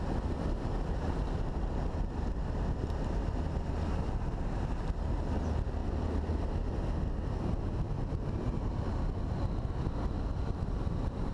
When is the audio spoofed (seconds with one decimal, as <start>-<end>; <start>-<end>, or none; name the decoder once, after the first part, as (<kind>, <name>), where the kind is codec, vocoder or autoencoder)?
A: none